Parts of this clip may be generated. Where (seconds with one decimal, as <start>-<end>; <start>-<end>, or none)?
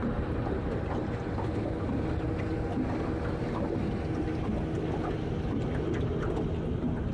none